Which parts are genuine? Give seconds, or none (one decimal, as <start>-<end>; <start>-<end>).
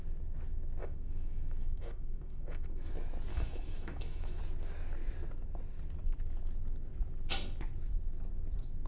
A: 0.0-0.8; 2.9-3.3; 4.4-8.9